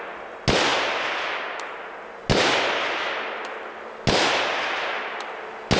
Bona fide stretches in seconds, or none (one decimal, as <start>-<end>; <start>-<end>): 0.0-5.8